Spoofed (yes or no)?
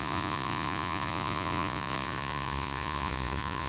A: yes